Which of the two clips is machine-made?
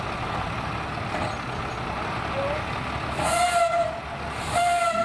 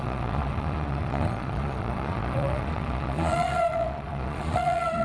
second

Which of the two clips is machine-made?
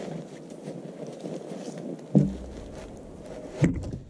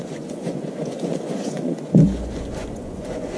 second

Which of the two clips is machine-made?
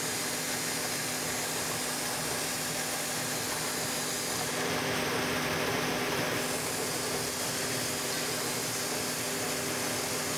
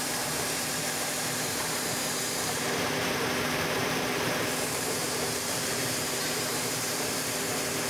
second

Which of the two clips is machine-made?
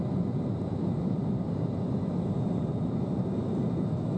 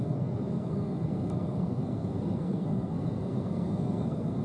second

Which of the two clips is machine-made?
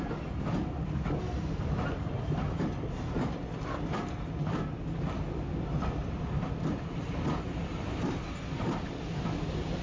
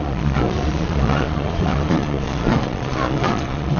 second